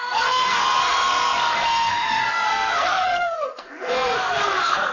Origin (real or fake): fake